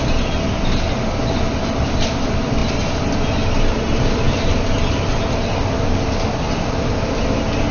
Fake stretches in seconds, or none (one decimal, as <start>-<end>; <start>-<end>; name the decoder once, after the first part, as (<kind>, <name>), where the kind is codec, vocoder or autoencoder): none